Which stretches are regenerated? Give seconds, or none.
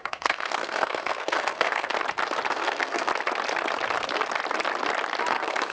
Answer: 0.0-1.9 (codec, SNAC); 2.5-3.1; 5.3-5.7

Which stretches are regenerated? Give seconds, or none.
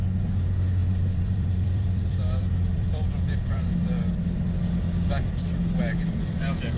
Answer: 0.8-3.7 (vocoder, BigVGAN v2)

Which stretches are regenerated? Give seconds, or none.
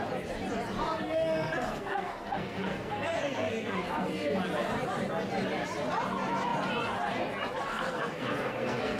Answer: 0.9-4.3 (codec, SNAC); 7.7-9.0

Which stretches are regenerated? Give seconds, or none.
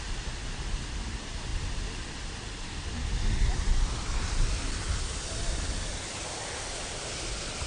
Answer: none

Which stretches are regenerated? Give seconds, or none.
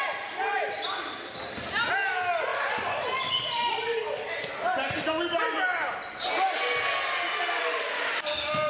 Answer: none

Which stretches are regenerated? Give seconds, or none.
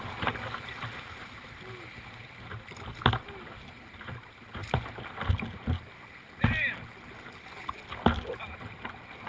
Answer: none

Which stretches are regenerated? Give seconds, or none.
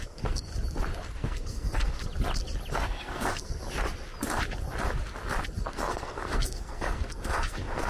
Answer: 0.0-0.5 (codec, SNAC); 1.1-2.0; 2.7-3.6; 5.7-7.9